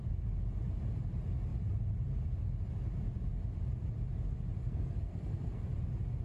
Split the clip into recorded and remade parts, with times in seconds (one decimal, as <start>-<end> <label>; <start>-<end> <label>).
0.0-4.6 recorded; 4.6-5.6 remade; 5.6-6.2 recorded